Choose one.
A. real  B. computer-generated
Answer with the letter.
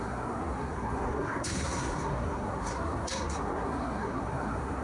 B